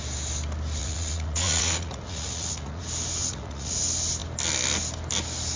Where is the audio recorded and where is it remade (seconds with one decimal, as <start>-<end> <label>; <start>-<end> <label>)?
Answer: 0.0-0.8 recorded; 0.8-2.8 remade; 2.8-3.2 recorded; 3.2-3.8 remade; 3.8-5.6 recorded